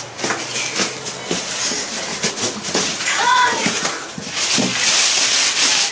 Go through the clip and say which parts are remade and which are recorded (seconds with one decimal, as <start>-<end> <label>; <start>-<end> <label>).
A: 0.0-2.1 recorded; 2.1-4.4 remade; 4.4-5.9 recorded